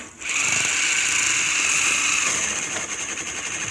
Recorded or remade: recorded